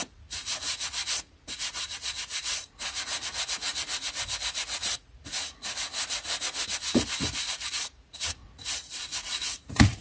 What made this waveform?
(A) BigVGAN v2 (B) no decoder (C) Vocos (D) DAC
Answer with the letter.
C